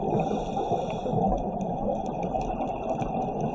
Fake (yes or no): no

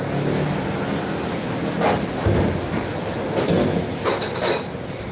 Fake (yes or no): no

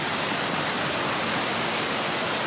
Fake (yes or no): no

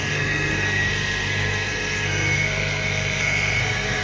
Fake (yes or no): yes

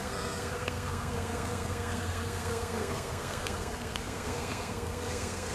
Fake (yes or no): yes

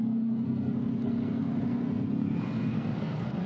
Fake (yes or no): yes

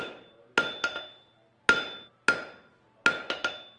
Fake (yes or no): no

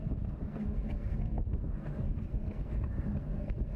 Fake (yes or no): yes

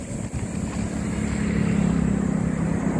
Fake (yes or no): no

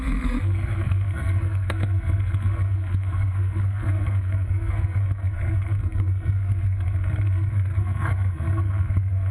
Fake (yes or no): yes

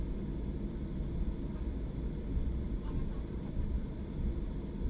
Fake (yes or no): no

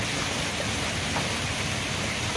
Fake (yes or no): no